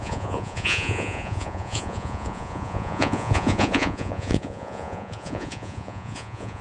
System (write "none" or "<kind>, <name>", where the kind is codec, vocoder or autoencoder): vocoder, Vocos